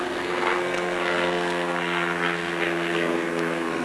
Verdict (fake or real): fake